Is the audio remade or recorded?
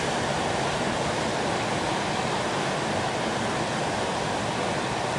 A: recorded